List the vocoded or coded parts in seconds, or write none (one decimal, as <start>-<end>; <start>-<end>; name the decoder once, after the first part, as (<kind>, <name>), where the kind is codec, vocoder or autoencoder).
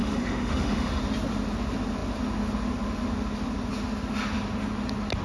0.0-1.0 (autoencoder, DAC-VAE)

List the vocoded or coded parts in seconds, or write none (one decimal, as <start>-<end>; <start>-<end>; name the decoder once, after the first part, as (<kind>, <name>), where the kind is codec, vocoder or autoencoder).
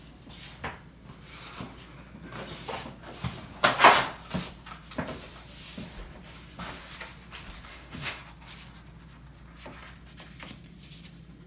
7.7-8.2 (autoencoder, DAC-VAE)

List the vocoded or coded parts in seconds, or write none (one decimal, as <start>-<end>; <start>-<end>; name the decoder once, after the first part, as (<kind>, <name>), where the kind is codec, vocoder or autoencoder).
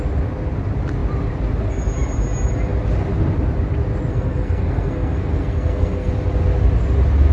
4.1-6.1 (codec, SNAC)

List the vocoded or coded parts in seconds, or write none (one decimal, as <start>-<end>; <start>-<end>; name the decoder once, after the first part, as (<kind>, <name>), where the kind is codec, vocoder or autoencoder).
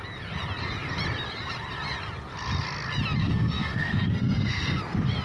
3.2-4.8 (codec, SNAC)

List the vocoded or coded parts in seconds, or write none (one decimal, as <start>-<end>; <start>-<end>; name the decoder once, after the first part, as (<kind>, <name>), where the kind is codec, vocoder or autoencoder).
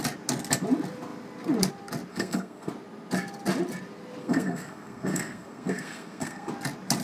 2.1-2.7 (codec, SNAC); 4.2-6.5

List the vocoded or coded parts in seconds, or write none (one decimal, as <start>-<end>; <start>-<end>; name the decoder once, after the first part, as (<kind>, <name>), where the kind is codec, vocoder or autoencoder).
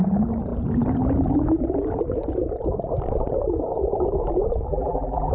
4.7-5.3 (vocoder, BigVGAN v2)